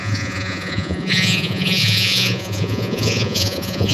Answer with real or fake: fake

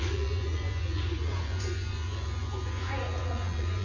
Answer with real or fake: fake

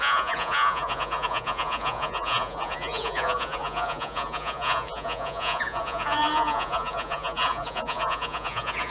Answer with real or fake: fake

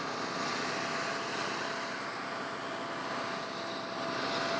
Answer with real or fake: real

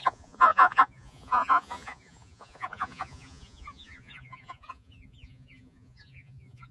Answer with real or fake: fake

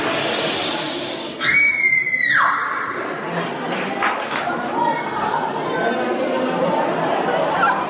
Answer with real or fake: real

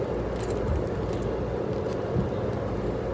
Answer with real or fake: real